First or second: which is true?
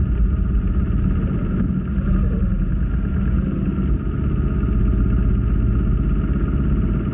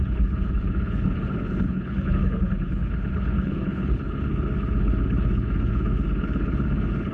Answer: first